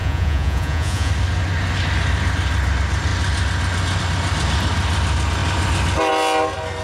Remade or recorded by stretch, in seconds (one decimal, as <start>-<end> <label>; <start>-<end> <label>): 0.0-1.1 remade; 1.1-6.8 recorded